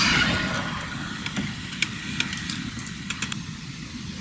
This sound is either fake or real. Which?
real